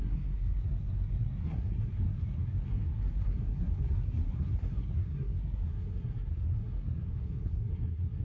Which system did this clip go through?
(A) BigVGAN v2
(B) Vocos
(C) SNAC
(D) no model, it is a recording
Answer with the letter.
C